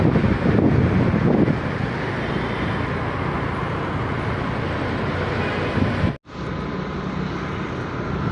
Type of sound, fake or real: real